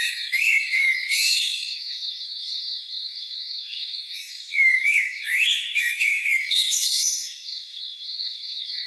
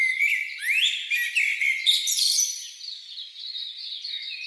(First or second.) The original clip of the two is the second